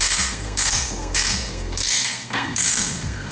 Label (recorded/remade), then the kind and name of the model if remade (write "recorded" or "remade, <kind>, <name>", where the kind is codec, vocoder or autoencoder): remade, codec, SNAC